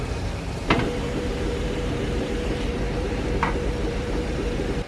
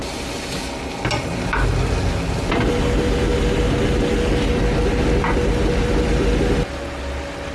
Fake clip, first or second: first